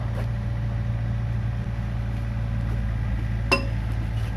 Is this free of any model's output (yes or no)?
yes